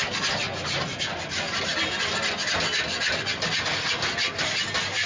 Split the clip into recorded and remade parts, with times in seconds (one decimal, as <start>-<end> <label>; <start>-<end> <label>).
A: 0.0-5.1 recorded